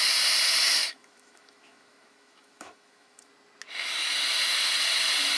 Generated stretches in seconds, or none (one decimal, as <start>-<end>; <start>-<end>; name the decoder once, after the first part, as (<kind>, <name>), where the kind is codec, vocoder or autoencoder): 0.8-3.3 (autoencoder, DAC-VAE)